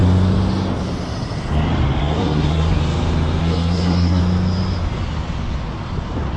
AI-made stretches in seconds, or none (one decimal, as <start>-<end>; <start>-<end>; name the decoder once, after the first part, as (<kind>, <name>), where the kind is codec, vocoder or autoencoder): 2.0-2.8 (codec, SNAC); 3.4-4.2